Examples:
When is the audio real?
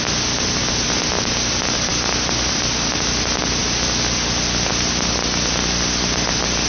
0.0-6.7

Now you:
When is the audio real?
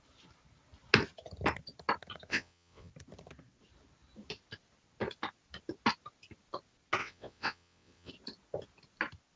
0.0-2.3; 2.9-7.0; 8.1-9.4